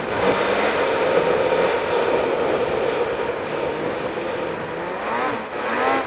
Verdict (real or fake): real